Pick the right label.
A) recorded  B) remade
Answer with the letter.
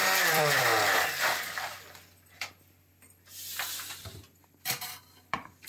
B